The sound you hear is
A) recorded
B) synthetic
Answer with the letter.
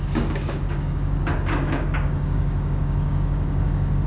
B